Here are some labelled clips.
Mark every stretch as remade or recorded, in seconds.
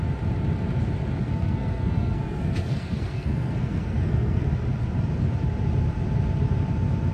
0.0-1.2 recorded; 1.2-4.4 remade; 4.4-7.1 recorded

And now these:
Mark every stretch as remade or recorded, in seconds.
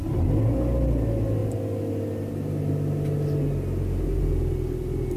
0.0-5.2 recorded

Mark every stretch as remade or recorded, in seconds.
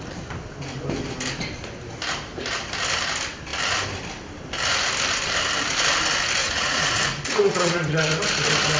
0.0-6.4 recorded; 6.4-8.1 remade; 8.1-8.8 recorded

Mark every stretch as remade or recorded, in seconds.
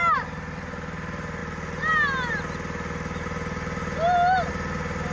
0.0-5.1 recorded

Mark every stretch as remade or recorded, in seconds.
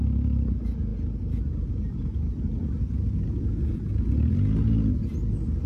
0.0-5.7 recorded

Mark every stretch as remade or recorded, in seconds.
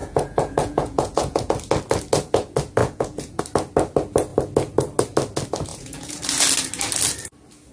0.0-1.5 remade; 1.5-2.8 recorded; 2.8-3.4 remade; 3.4-5.7 recorded; 5.7-6.2 remade; 6.2-7.7 recorded